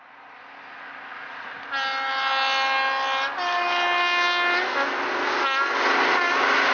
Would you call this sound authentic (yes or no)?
yes